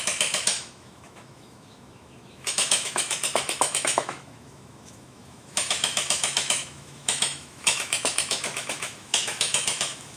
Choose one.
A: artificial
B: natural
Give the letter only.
A